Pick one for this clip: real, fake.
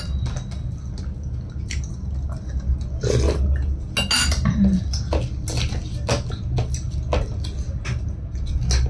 real